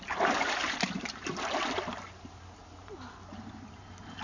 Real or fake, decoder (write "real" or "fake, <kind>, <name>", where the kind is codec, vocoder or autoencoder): real